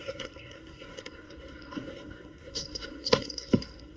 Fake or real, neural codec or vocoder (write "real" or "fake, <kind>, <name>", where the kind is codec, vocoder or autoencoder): fake, codec, SNAC